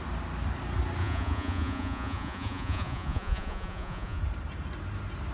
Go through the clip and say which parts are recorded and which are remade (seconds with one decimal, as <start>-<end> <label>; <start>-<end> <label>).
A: 0.0-1.0 recorded; 1.0-4.2 remade; 4.2-5.3 recorded